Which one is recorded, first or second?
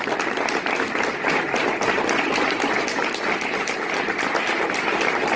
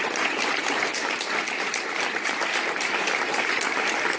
first